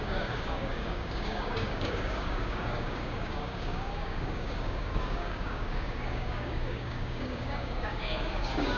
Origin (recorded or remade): remade